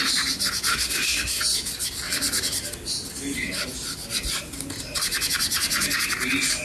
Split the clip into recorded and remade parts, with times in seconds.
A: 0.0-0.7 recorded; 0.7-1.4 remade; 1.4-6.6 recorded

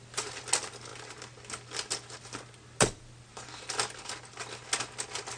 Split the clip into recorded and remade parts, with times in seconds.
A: 0.0-5.4 recorded